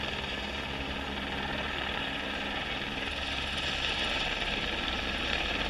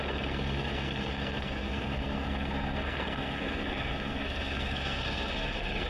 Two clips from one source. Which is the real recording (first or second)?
first